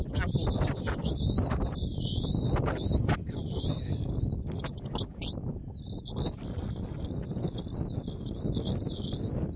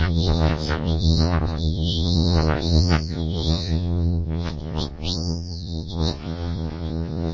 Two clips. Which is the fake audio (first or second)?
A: second